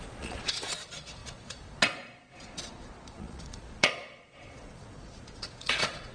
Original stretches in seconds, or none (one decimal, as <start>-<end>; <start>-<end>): none